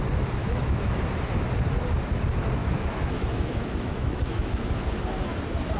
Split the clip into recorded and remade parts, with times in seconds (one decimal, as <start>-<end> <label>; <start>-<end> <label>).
0.0-0.4 recorded; 0.4-1.0 remade; 1.0-2.6 recorded; 2.6-4.5 remade; 4.5-5.8 recorded

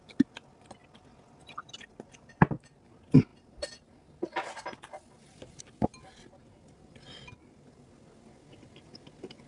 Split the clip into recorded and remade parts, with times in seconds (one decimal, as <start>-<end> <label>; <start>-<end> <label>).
0.0-9.5 recorded

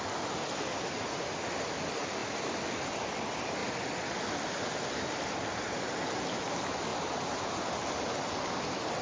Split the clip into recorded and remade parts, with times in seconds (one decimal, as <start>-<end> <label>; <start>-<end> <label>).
0.0-9.0 recorded

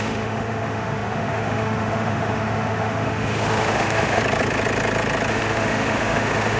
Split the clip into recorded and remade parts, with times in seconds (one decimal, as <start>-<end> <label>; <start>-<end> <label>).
0.0-4.2 remade; 4.2-5.3 recorded; 5.3-6.6 remade

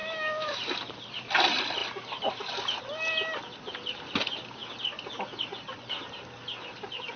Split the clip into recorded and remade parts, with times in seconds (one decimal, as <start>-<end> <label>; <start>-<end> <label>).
0.0-0.6 remade; 0.6-7.2 recorded

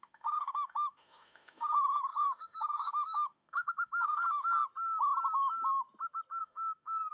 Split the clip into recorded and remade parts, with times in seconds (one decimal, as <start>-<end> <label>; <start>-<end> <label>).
0.0-4.6 remade; 4.6-6.4 recorded; 6.4-7.1 remade

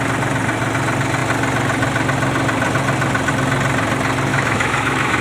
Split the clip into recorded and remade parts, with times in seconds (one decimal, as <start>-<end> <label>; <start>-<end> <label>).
0.0-4.3 recorded; 4.3-5.2 remade

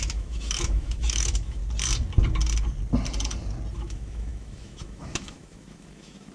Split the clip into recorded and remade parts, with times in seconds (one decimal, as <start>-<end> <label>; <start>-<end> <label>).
0.0-1.6 remade; 1.6-3.7 recorded; 3.7-6.3 remade